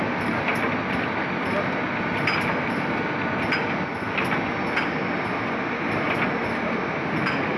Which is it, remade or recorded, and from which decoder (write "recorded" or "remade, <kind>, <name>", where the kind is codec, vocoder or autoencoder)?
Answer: recorded